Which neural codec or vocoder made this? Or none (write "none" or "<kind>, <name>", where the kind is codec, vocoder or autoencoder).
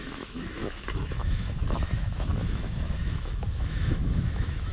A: autoencoder, DAC-VAE